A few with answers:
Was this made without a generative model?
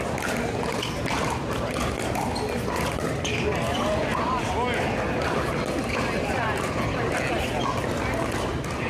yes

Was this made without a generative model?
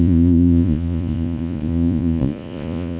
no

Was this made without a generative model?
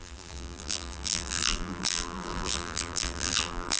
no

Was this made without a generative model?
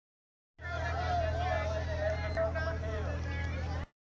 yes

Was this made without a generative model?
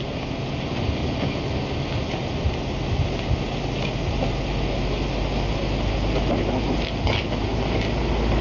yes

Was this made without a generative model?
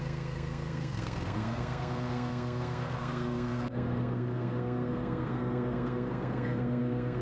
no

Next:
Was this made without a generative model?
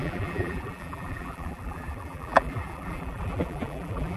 no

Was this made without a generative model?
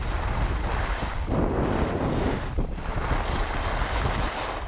yes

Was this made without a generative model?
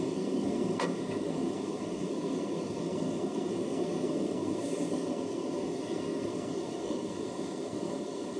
no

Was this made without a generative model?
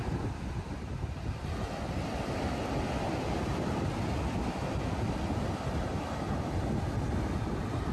yes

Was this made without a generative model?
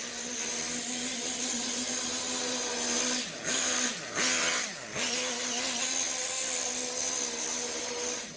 yes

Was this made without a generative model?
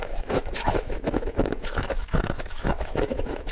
no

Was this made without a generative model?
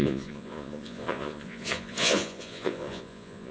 no